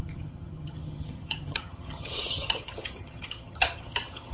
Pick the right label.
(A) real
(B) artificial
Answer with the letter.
B